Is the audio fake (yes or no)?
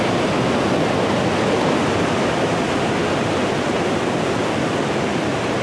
no